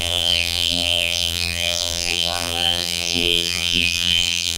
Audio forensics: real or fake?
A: fake